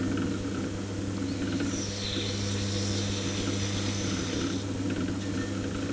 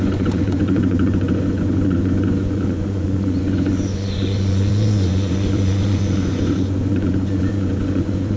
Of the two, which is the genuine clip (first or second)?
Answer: first